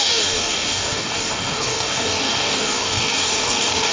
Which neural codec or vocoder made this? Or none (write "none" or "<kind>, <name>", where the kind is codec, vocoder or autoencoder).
codec, DAC